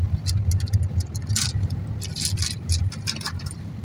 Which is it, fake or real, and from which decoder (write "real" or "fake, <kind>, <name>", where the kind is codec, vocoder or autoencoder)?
real